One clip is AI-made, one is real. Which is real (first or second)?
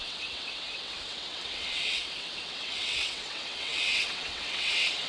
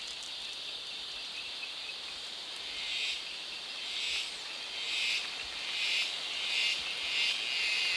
second